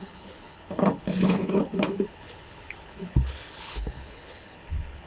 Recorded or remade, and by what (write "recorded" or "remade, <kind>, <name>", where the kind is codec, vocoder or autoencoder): remade, codec, HILCodec